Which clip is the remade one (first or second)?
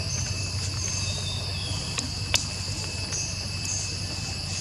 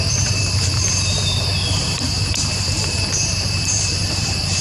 second